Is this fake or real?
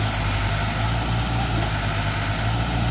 real